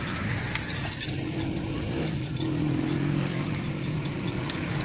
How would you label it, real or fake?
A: real